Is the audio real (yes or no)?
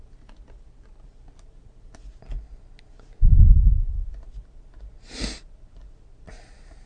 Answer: yes